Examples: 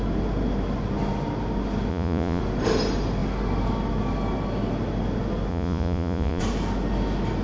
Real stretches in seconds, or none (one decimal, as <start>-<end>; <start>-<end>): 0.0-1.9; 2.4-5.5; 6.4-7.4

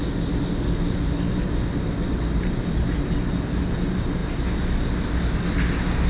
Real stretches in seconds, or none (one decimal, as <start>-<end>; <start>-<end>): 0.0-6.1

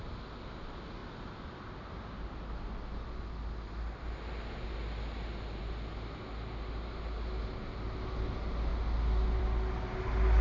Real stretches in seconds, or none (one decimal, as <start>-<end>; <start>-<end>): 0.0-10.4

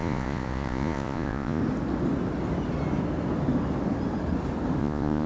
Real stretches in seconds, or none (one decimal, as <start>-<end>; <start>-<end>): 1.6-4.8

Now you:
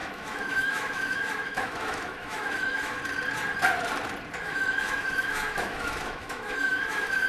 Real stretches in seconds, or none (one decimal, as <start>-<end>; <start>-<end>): 3.0-4.4

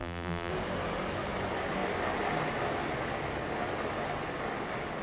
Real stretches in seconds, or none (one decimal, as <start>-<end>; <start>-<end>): 0.5-5.0

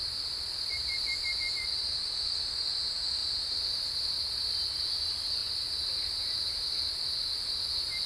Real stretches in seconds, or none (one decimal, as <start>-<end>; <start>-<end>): 0.0-3.2; 4.6-5.4; 6.7-8.1

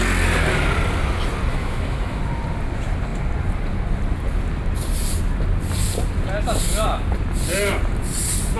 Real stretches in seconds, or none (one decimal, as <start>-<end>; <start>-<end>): 0.0-1.5; 2.2-8.6